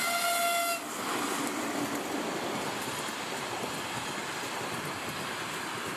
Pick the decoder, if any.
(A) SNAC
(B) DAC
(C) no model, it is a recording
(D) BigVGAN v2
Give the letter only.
C